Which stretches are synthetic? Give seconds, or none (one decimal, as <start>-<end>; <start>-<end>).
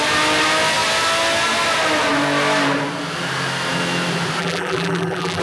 4.4-5.4